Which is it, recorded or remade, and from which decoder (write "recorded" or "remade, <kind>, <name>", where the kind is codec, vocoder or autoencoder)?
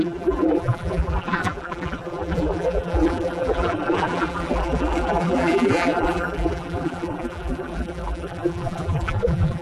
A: remade, vocoder, BigVGAN v2